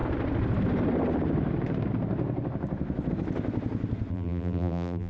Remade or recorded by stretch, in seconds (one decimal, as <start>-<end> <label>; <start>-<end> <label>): 0.0-4.1 recorded; 4.1-5.1 remade

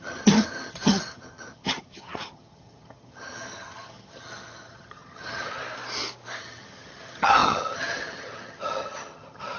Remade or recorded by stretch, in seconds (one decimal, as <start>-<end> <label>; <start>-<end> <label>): 0.0-5.6 remade; 5.6-6.4 recorded; 6.4-9.6 remade

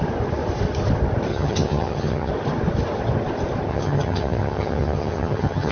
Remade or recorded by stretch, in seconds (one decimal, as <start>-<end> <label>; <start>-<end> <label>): 0.0-1.3 recorded; 1.3-2.3 remade; 2.3-3.7 recorded; 3.7-5.7 remade

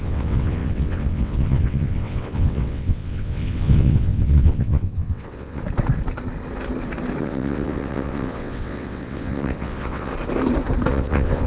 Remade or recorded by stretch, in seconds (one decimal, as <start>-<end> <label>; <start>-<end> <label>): 0.0-5.6 remade; 5.6-7.2 recorded; 7.2-10.1 remade; 10.1-10.9 recorded; 10.9-11.5 remade

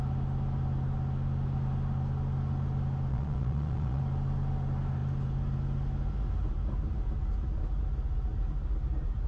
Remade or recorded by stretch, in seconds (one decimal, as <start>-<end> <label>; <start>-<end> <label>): 0.0-3.1 recorded; 3.1-4.0 remade; 4.0-9.3 recorded

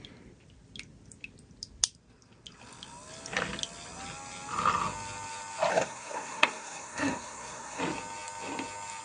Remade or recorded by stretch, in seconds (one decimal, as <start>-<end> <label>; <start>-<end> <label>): 0.0-5.7 recorded; 5.7-7.8 remade; 7.8-9.0 recorded

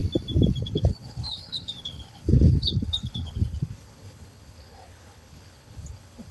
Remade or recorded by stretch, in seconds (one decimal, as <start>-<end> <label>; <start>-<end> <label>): 0.0-0.6 recorded; 0.6-6.3 remade